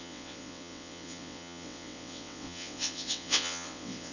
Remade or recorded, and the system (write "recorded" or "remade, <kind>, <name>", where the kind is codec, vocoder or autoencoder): remade, vocoder, WaveNeXt